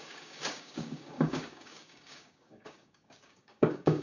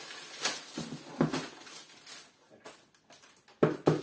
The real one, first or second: second